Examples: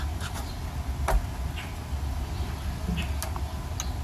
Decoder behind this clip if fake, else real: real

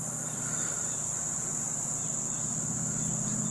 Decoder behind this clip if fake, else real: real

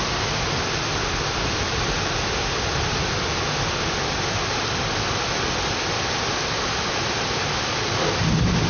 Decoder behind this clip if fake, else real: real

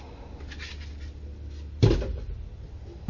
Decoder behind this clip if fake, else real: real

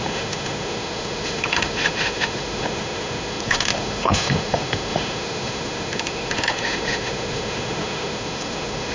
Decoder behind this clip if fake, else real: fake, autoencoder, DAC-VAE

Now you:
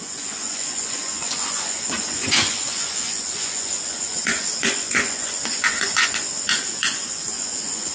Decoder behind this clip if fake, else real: fake, vocoder, Vocos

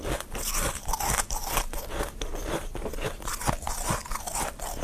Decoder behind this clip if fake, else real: real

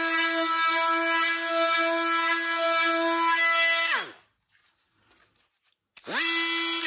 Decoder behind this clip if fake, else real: real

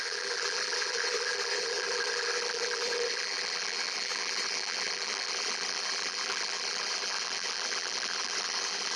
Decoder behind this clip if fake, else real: fake, vocoder, BigVGAN v2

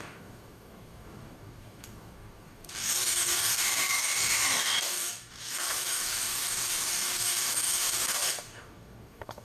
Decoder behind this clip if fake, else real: fake, codec, DAC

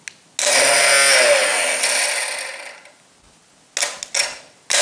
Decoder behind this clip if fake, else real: real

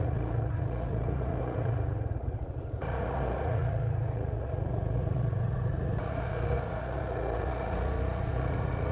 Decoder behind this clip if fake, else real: fake, vocoder, Vocos